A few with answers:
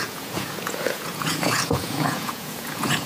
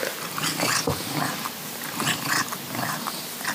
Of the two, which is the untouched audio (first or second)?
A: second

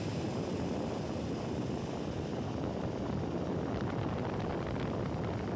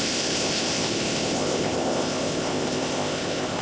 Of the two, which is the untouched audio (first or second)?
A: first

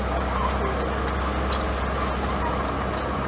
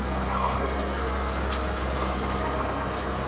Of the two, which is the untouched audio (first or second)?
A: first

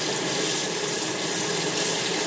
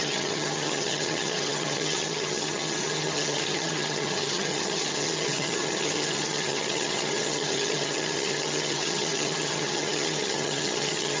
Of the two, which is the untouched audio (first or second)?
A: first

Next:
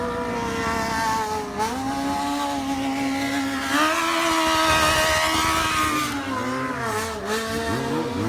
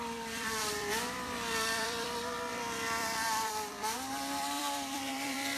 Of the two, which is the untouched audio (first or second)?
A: first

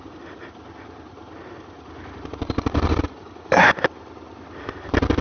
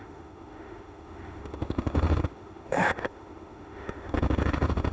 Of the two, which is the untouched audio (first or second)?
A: first